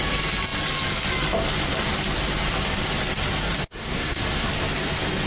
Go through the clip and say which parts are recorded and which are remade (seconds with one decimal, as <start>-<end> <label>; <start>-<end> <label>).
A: 0.0-3.6 recorded; 3.6-4.5 remade; 4.5-5.3 recorded